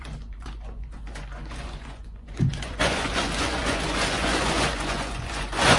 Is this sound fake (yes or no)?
yes